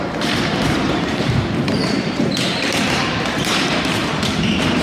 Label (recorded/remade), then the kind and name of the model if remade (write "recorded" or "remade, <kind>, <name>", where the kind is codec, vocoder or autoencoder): remade, vocoder, BigVGAN v2